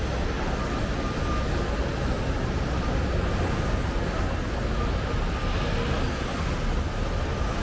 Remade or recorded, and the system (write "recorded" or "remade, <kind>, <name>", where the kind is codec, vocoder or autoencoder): recorded